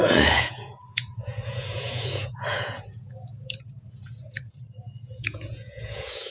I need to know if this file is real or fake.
fake